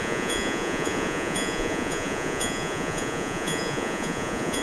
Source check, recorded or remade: remade